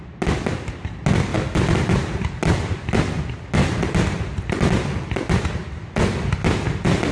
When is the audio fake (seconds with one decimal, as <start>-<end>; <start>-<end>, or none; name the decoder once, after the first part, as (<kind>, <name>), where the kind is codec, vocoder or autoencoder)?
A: 1.3-3.2 (vocoder, BigVGAN v2)